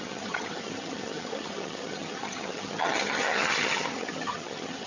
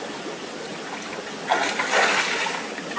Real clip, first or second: second